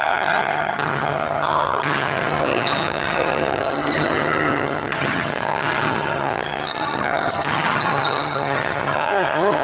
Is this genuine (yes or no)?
no